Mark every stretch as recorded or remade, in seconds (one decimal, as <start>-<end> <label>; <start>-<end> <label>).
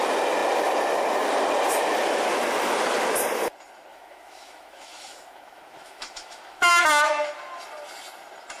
0.0-3.9 recorded; 3.9-6.7 remade; 6.7-8.6 recorded